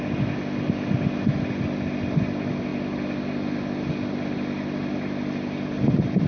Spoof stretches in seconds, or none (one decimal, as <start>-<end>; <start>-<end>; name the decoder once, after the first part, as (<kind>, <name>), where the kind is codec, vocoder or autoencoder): none